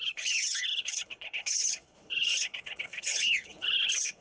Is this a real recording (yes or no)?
no